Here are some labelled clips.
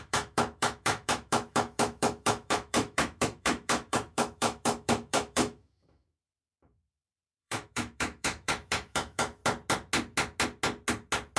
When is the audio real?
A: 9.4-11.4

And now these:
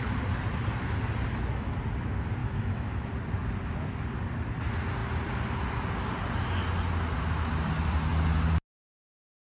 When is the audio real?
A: 0.0-2.4; 3.1-9.5

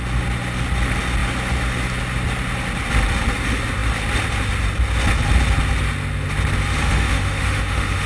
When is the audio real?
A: 0.0-6.8

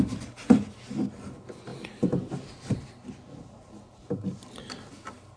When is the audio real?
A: 0.0-5.4

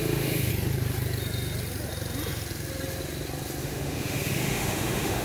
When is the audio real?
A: 0.5-3.6

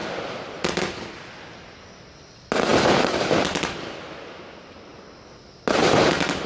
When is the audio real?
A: 0.0-6.5